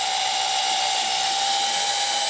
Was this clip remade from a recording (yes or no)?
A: no